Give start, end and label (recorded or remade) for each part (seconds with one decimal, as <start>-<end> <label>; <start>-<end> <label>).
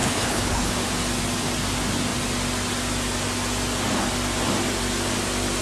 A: 0.0-0.7 remade; 0.7-5.6 recorded